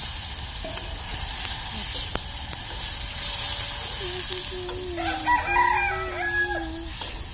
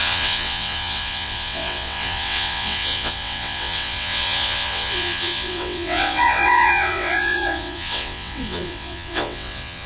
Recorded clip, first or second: first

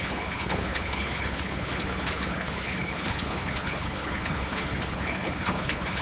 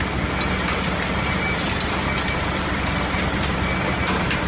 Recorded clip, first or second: second